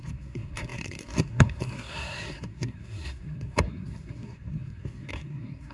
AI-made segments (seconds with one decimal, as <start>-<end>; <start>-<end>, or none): 0.0-5.7